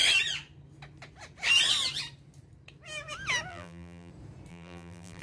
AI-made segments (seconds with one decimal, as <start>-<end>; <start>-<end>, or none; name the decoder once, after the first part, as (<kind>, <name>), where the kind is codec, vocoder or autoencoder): 3.5-4.1 (vocoder, BigVGAN v2); 4.5-5.2